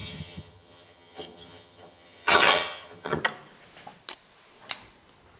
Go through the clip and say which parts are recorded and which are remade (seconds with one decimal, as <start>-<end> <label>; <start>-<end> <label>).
0.0-3.2 remade; 3.2-5.4 recorded